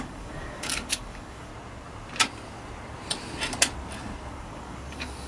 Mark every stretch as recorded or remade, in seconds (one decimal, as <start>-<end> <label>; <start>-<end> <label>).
0.0-1.5 remade; 1.5-4.3 recorded; 4.3-5.3 remade